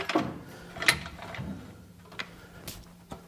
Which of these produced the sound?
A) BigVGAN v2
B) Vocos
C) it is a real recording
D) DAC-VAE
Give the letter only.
C